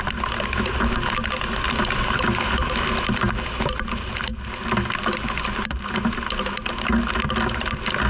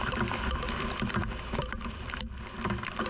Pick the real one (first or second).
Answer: first